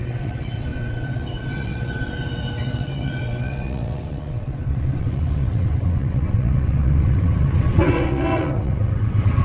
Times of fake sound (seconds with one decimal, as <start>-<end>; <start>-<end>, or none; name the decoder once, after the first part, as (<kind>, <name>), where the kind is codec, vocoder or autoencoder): 0.0-9.4 (vocoder, WaveNeXt)